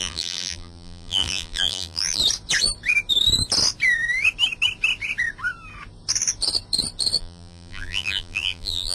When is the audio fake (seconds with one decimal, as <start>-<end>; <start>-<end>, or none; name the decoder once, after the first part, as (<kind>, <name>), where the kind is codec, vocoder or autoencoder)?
0.0-2.2 (vocoder, BigVGAN v2); 7.2-8.9